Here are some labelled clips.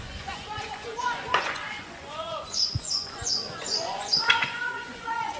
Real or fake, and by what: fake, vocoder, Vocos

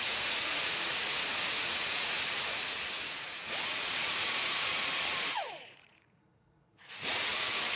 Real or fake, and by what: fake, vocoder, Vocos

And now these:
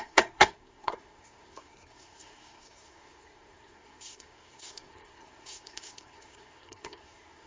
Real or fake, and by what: fake, codec, SNAC